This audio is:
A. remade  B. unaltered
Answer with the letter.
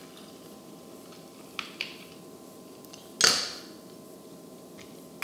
B